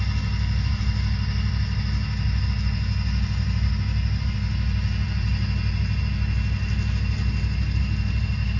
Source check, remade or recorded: recorded